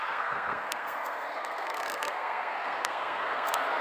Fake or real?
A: fake